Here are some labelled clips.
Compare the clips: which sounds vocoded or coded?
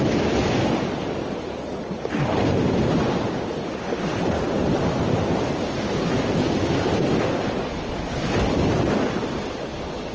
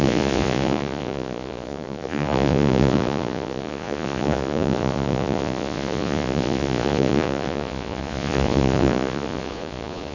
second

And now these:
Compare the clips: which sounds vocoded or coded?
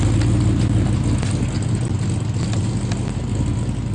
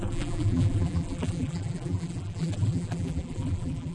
second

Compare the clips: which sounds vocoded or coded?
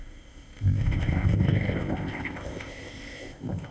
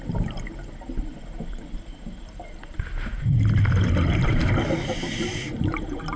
first